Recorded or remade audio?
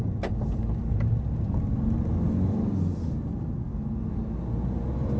recorded